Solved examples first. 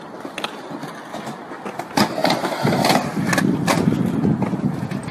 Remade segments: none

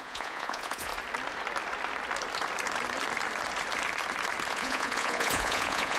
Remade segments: 0.0-0.9 (vocoder, Vocos); 4.5-6.0

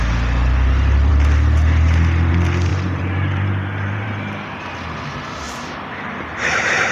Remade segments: 2.7-4.6 (vocoder, BigVGAN v2)

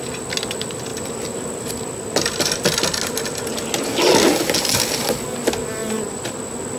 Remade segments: none

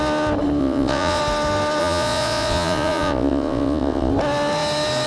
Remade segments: 0.6-1.2 (vocoder, Vocos); 1.8-4.1

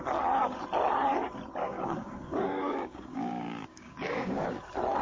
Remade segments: 1.6-4.6 (codec, DAC)